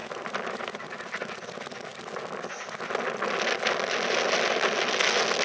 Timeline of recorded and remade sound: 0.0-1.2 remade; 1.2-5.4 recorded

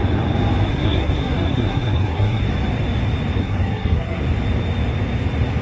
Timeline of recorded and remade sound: 0.0-0.7 recorded; 0.7-2.4 remade; 2.4-3.4 recorded; 3.4-4.2 remade; 4.2-5.6 recorded

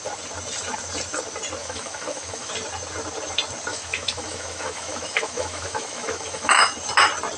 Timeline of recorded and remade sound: 0.0-1.6 recorded; 1.6-2.5 remade; 2.5-3.7 recorded; 3.7-6.6 remade; 6.6-7.4 recorded

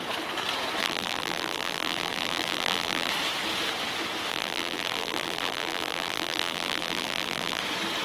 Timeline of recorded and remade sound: 0.0-0.8 recorded; 0.8-3.1 remade; 3.1-4.3 recorded; 4.3-7.6 remade; 7.6-8.0 recorded